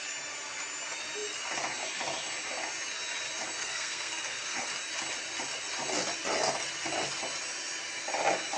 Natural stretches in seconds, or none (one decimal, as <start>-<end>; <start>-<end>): 0.0-3.6; 4.7-8.6